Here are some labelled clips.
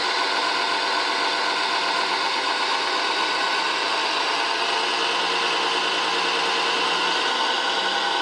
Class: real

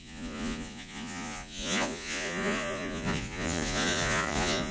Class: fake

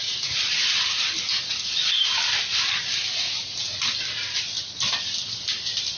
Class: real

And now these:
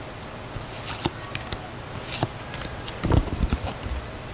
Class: real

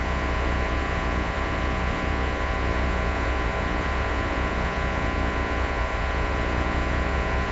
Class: fake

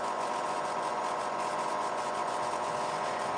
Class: fake